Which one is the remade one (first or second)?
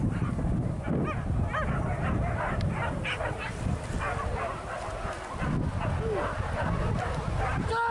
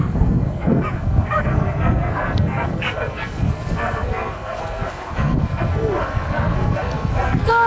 second